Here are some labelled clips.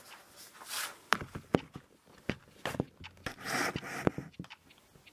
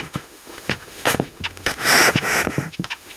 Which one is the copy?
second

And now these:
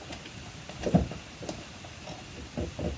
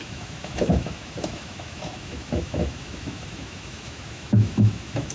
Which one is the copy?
second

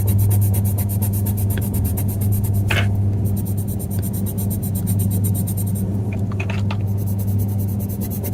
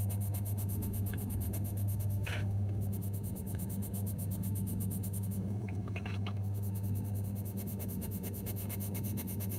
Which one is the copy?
second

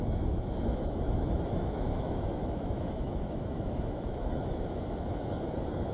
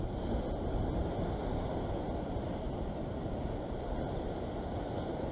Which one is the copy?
first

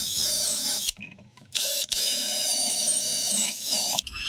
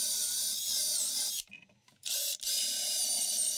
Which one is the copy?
first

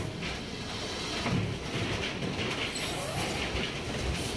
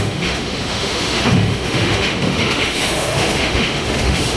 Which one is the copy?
second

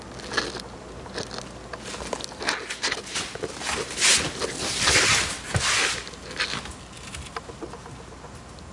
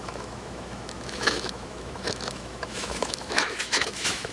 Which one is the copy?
second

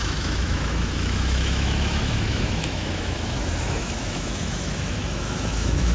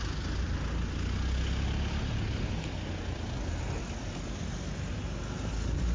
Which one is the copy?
first